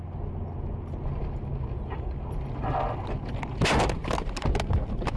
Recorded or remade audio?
recorded